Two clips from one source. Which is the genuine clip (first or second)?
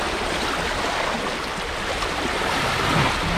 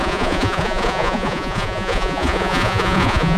first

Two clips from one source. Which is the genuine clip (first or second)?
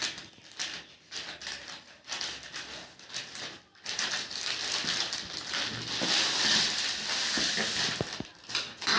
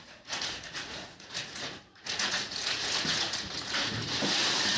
first